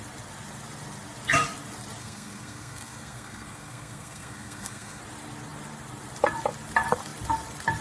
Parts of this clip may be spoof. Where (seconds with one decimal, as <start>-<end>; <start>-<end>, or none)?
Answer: 2.0-5.0